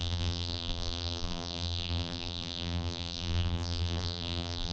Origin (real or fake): fake